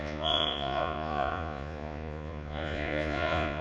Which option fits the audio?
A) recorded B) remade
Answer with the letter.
B